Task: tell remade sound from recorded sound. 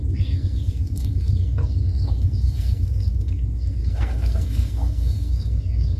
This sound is remade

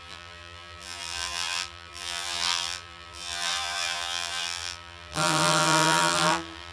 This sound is remade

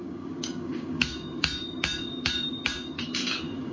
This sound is remade